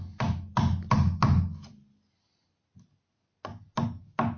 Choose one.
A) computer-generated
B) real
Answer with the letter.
B